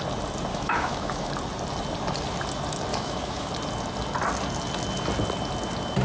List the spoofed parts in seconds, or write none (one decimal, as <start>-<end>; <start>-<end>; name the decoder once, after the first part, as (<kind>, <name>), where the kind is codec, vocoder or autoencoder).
0.5-1.3 (autoencoder, DAC-VAE); 2.9-3.5